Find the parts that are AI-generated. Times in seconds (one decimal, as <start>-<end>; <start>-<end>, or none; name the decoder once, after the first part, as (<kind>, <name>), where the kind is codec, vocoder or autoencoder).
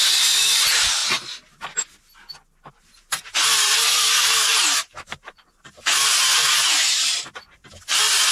0.0-1.0 (vocoder, BigVGAN v2); 2.7-7.6